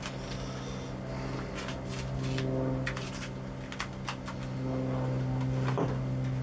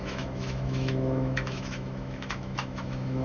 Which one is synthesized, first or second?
second